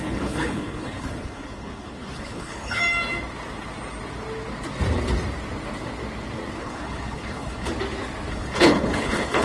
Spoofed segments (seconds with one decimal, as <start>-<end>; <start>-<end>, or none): 0.0-2.8; 6.6-7.7; 8.3-9.4